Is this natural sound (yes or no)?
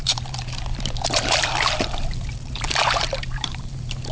no